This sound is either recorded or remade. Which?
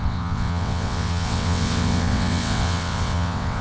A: remade